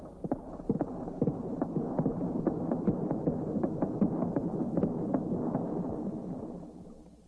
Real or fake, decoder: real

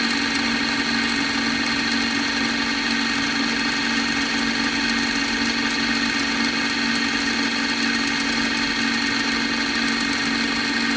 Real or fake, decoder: real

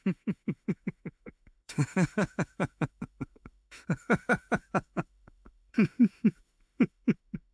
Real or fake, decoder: fake, autoencoder, DAC-VAE